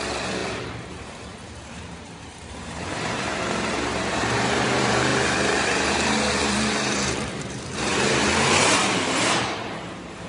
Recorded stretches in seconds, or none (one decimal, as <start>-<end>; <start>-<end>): none